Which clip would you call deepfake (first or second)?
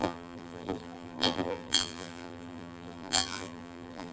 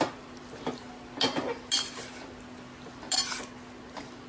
first